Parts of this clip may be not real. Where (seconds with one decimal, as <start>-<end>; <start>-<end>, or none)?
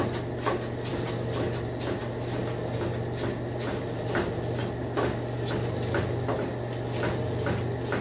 none